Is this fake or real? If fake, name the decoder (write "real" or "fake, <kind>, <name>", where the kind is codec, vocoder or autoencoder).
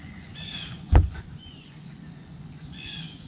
fake, vocoder, Vocos